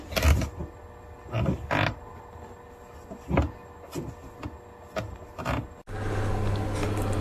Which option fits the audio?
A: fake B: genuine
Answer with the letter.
B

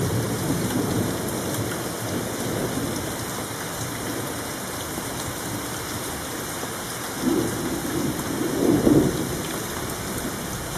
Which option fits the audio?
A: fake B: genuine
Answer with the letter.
B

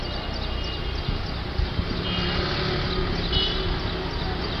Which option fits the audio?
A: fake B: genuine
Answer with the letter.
B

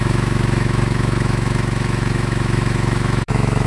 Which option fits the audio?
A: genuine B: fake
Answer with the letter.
B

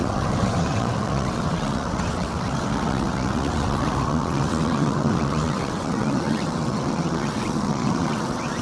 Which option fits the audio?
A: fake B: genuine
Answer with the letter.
A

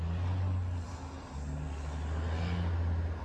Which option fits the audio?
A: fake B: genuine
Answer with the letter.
B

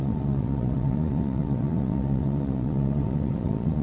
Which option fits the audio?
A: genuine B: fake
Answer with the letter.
B